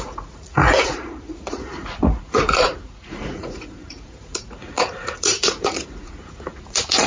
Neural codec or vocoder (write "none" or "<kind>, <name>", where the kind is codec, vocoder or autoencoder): vocoder, Vocos